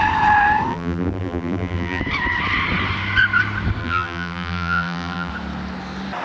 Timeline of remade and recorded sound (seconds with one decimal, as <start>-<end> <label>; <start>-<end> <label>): 0.0-0.7 recorded; 0.7-2.0 remade; 2.0-3.8 recorded; 3.8-5.3 remade; 5.3-6.2 recorded